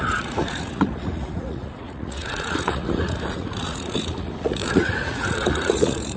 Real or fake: fake